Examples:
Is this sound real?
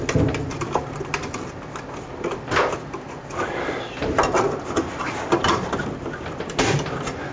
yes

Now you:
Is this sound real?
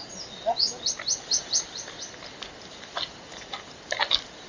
yes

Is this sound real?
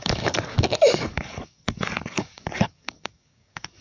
no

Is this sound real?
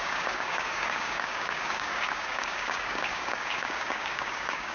no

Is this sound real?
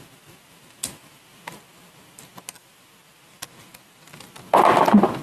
yes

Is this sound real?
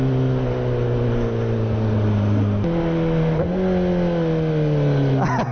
yes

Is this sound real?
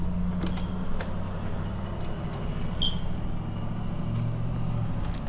yes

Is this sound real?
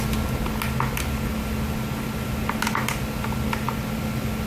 yes